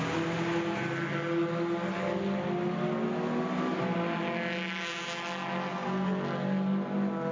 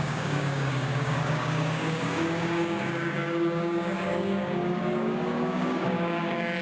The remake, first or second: second